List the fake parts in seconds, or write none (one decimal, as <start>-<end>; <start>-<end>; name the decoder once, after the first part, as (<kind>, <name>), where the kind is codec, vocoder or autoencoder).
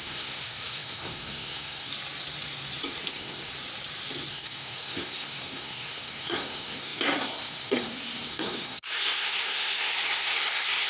0.0-1.9 (codec, SNAC); 3.1-3.5; 4.3-10.9